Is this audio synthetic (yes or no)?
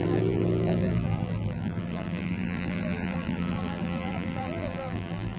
yes